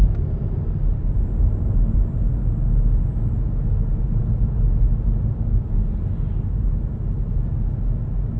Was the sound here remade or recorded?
recorded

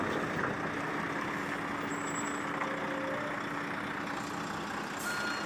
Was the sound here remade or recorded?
recorded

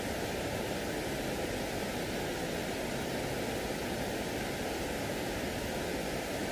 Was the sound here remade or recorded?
recorded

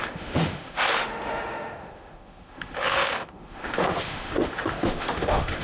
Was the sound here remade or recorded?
remade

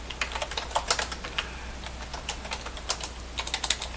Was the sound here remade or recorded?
recorded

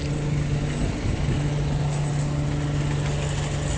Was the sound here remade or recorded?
recorded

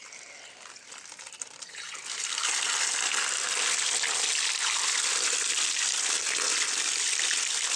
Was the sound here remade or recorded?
recorded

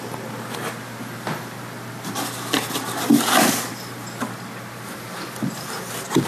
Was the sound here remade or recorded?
remade